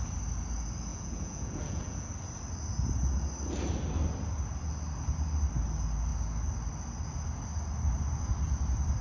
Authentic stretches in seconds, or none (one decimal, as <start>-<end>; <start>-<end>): 0.0-0.9; 2.1-9.0